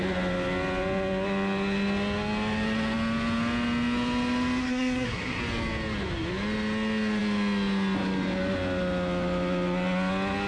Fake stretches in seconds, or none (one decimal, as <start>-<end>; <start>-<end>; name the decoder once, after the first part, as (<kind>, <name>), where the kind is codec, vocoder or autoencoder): 4.6-5.4 (codec, SNAC)